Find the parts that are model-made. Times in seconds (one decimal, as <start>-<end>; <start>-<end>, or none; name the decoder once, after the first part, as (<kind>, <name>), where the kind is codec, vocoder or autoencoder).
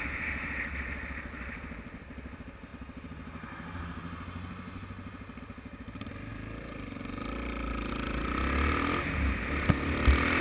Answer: none